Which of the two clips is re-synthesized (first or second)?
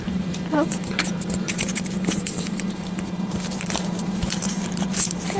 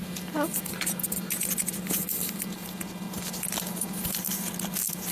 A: first